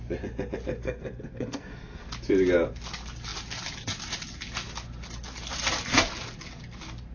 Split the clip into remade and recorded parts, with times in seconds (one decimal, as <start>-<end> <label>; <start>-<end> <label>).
0.0-0.8 recorded; 0.8-2.1 remade; 2.1-7.1 recorded